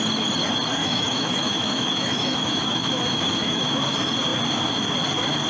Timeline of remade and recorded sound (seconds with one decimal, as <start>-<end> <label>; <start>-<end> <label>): 0.0-0.8 recorded; 0.8-3.8 remade; 3.8-5.5 recorded